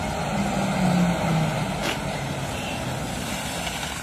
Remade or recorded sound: recorded